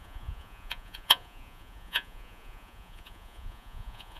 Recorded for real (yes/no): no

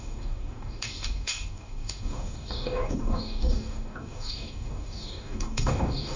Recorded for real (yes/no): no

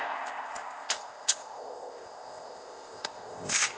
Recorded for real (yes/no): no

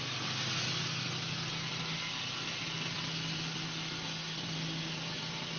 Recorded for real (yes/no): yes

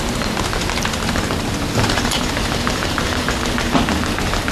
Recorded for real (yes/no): yes